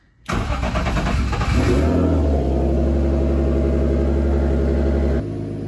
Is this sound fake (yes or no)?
no